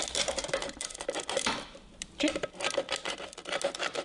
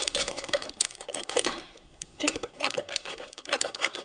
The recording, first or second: first